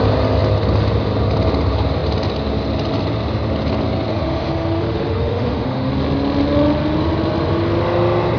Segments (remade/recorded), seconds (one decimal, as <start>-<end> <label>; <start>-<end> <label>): 0.0-4.1 recorded; 4.1-5.9 remade; 5.9-8.4 recorded